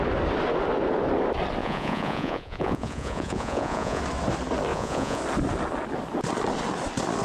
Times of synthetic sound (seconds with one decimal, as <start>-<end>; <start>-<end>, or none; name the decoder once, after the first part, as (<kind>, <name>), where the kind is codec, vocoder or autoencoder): 1.6-4.0 (vocoder, Vocos); 4.7-5.2